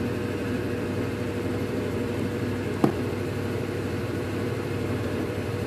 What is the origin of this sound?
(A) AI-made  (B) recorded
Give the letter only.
A